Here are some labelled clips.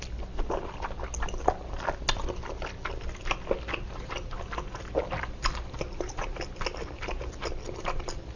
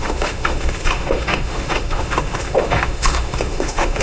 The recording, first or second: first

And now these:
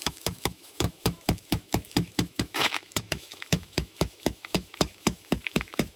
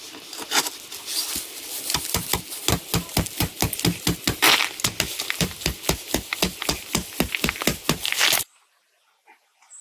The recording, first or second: second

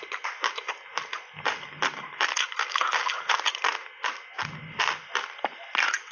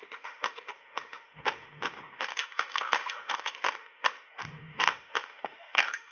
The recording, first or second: first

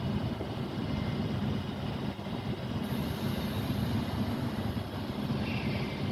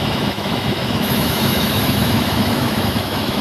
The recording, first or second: first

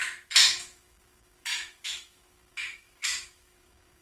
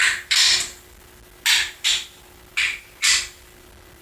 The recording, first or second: second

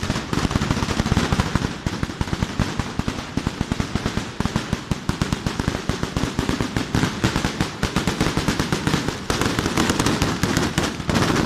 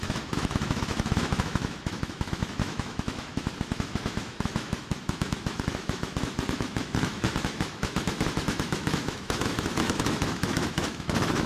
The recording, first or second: first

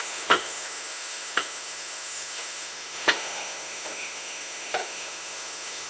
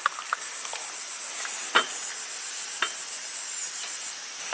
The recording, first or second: second